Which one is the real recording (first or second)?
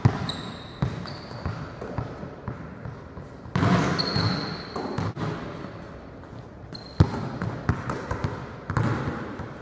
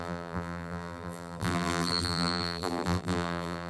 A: first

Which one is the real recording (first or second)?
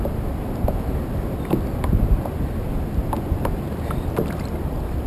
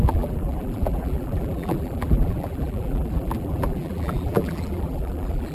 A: first